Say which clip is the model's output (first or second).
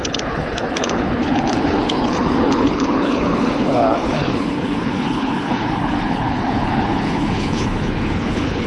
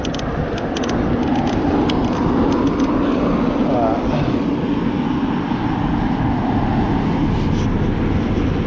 first